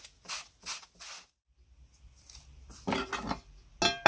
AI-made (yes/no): no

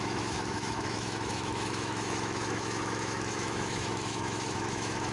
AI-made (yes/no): yes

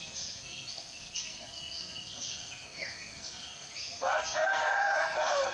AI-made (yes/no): yes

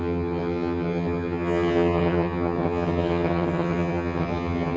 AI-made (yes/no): yes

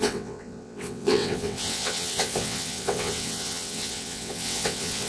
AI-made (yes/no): yes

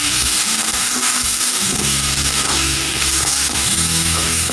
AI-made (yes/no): yes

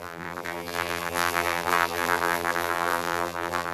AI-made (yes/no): yes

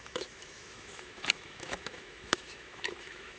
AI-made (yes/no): yes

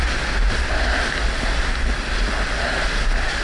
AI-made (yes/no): no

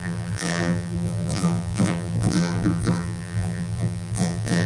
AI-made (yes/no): yes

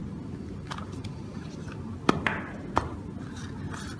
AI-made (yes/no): no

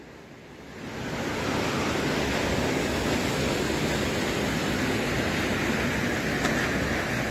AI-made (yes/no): no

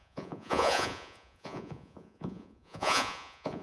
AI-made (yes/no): yes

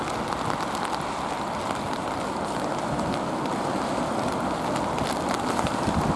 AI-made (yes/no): no